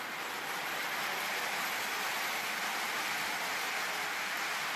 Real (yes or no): yes